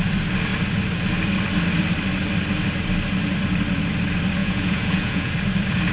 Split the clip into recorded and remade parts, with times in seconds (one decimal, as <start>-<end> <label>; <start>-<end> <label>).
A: 0.0-4.4 recorded; 4.4-5.3 remade; 5.3-5.9 recorded